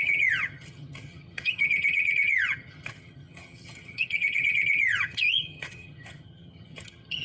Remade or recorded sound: remade